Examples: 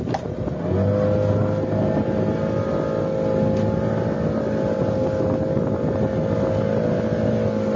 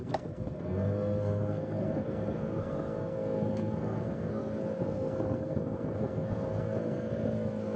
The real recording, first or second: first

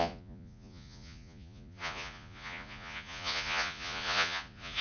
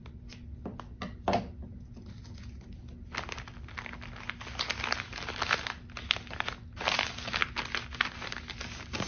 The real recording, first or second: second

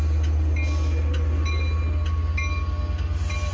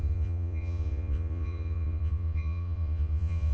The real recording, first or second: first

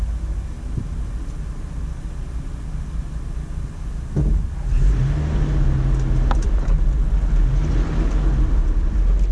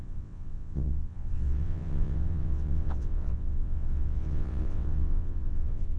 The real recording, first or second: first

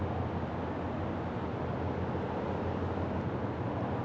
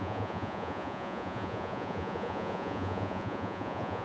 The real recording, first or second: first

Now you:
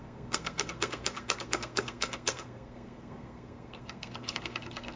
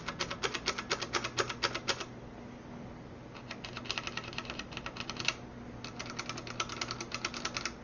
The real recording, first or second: second